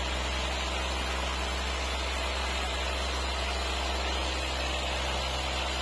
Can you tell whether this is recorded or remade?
recorded